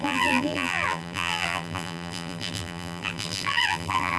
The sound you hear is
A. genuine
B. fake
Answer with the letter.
B